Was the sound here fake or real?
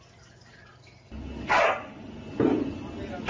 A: real